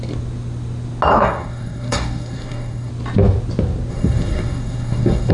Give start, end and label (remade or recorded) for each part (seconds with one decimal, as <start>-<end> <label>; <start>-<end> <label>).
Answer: 0.0-1.1 recorded; 1.1-2.9 remade; 2.9-3.9 recorded; 3.9-5.3 remade